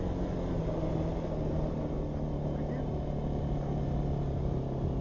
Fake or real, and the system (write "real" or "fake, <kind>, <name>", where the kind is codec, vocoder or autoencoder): real